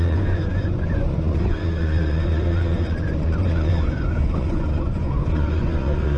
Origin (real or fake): fake